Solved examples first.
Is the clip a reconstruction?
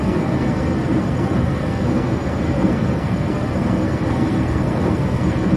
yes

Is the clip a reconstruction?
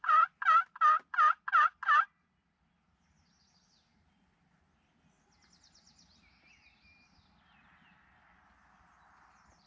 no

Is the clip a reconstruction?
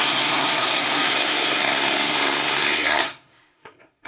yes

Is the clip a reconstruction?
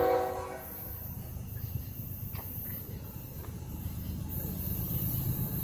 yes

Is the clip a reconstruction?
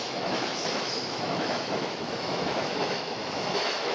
yes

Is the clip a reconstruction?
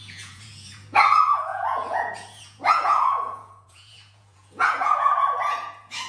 yes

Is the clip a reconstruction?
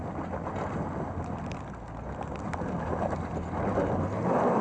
no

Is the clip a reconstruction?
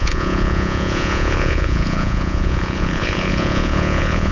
yes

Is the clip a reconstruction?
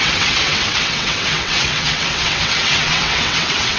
yes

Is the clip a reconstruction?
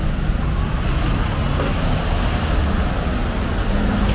no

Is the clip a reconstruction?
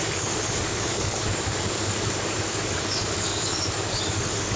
yes